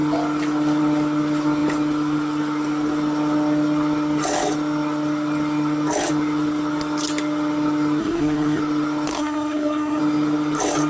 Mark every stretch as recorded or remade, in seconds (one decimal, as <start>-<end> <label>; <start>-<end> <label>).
0.0-8.0 recorded; 8.0-8.6 remade; 8.6-9.1 recorded; 9.1-10.0 remade; 10.0-10.9 recorded